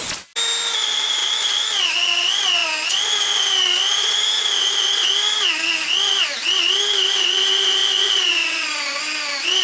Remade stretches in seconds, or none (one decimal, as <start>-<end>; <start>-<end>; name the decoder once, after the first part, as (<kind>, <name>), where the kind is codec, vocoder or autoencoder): 7.8-9.0 (vocoder, Vocos)